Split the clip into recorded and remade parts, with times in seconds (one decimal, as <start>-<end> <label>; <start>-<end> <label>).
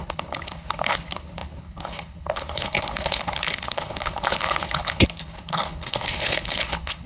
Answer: 0.0-7.1 remade